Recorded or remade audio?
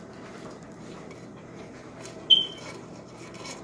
recorded